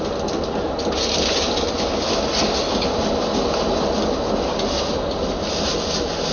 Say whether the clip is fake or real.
real